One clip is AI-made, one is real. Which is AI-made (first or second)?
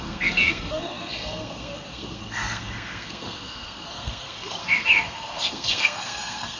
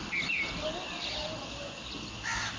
first